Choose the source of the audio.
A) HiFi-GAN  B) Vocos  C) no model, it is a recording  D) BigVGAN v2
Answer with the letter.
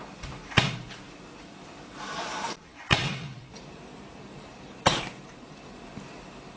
D